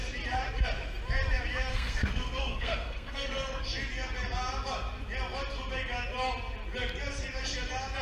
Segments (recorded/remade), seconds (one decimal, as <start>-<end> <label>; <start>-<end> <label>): 0.0-1.7 recorded; 1.7-3.6 remade; 3.6-8.0 recorded